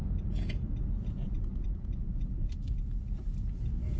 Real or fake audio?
fake